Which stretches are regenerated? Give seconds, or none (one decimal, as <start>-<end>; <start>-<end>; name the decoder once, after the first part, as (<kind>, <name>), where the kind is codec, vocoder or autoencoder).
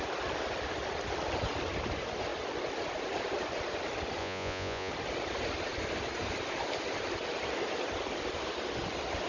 4.2-4.9 (vocoder, Vocos)